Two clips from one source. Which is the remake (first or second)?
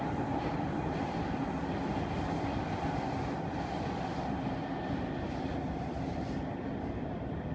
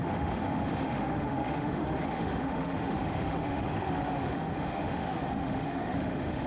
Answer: second